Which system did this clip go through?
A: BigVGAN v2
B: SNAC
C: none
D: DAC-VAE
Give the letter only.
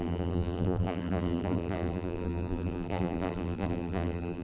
A